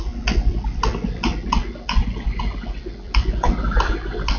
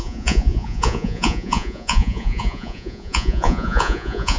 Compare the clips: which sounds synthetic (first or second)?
second